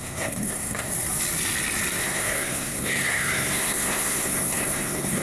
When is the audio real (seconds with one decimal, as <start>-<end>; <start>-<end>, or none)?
0.9-2.0